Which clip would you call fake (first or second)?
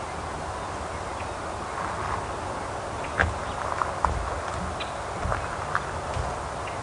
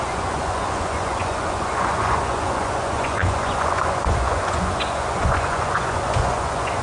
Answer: second